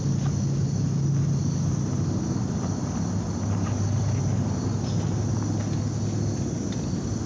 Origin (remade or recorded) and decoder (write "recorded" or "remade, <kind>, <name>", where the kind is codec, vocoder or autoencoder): recorded